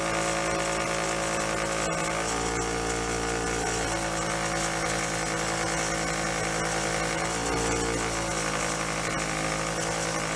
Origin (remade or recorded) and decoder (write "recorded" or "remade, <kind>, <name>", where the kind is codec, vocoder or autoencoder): recorded